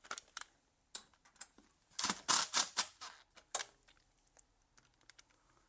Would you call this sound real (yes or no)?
yes